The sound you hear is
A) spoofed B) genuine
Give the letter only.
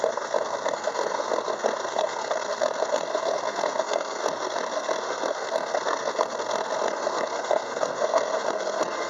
A